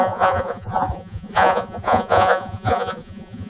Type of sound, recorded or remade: remade